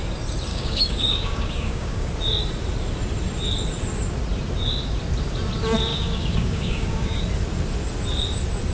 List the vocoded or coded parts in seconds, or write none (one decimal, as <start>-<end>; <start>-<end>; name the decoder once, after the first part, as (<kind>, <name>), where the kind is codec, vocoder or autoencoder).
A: 0.5-2.1 (codec, DAC); 5.9-7.2